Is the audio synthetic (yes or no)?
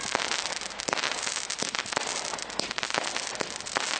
no